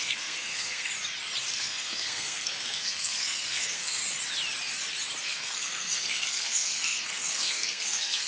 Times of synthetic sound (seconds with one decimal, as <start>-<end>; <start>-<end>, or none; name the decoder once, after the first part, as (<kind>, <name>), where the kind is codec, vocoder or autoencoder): 0.0-0.9 (codec, SNAC); 1.5-4.0; 5.2-8.3